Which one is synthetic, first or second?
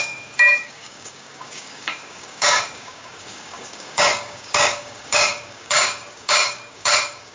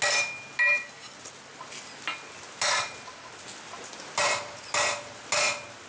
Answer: first